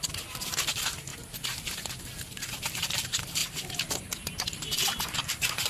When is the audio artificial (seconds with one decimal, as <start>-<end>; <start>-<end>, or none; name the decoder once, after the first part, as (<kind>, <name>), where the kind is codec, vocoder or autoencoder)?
0.0-1.1 (vocoder, BigVGAN v2); 2.2-5.7